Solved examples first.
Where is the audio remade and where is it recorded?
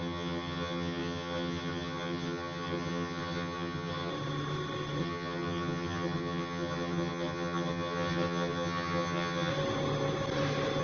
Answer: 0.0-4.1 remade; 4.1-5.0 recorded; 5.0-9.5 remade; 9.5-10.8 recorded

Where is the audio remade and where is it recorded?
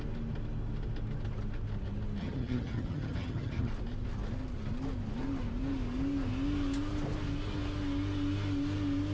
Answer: 0.0-2.2 recorded; 2.2-3.7 remade; 3.7-9.1 recorded